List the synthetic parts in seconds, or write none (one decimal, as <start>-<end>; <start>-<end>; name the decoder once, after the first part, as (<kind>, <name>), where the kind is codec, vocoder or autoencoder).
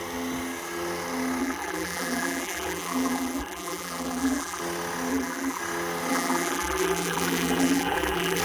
1.4-4.6 (vocoder, BigVGAN v2); 5.1-5.6; 6.1-8.4